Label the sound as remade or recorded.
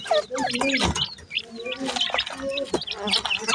recorded